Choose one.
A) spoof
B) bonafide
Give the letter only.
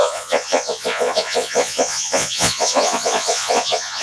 A